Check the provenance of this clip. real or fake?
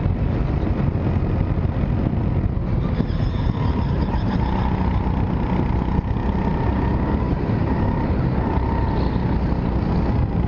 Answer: real